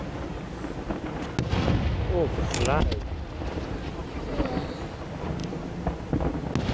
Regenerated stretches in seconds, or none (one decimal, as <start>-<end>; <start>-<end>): 4.0-5.0